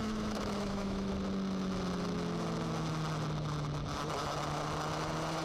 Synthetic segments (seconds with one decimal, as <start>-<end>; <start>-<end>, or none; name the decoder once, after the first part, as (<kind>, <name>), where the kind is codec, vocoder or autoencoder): 0.0-1.1 (autoencoder, DAC-VAE)

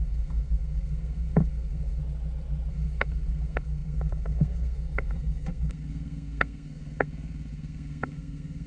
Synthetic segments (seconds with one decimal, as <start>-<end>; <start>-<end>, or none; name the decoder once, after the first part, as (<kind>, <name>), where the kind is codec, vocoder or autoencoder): 0.0-2.0 (codec, SNAC); 2.7-8.7

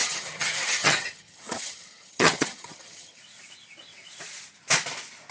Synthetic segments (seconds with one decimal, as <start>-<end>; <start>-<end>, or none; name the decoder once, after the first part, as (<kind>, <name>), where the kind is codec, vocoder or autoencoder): 0.0-3.2 (vocoder, HiFi-GAN)

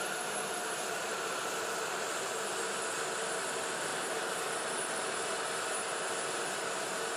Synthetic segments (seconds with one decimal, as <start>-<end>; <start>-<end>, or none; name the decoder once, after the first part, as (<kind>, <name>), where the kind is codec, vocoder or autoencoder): none